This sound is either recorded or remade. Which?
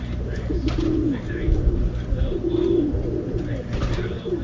recorded